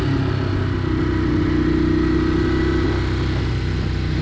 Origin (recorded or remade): recorded